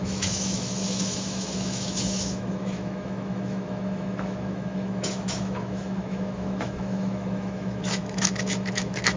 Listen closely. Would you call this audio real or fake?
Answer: fake